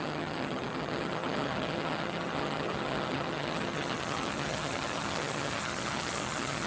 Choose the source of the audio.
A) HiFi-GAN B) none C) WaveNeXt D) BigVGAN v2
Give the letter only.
A